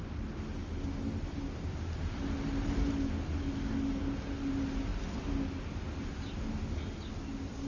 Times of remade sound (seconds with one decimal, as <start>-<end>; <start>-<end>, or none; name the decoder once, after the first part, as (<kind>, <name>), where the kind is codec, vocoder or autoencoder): none